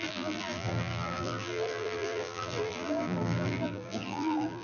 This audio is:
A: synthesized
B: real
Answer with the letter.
A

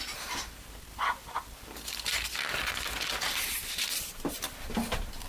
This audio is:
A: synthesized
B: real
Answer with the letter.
A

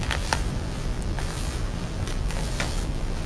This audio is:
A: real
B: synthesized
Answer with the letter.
B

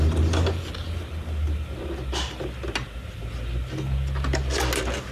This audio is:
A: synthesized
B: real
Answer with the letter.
B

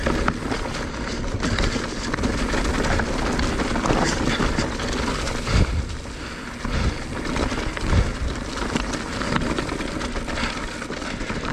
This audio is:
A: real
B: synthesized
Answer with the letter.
A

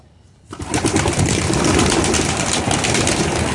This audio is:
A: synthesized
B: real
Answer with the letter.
B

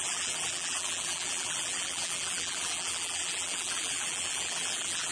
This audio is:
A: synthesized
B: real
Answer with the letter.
A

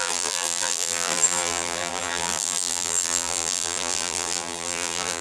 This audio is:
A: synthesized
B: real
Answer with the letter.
A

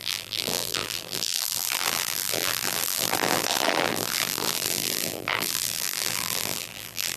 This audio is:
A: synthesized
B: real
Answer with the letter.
A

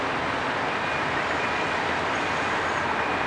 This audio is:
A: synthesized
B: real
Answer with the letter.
B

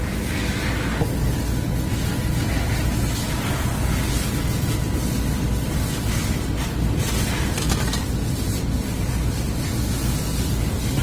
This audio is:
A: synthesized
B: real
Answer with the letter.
B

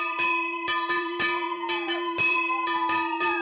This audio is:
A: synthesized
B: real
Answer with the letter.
A